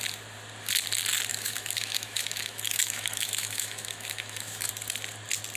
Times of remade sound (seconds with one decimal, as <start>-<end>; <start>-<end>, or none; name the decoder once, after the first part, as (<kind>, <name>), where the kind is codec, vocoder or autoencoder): 1.3-4.7 (autoencoder, DAC-VAE)